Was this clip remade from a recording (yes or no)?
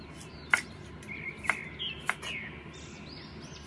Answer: no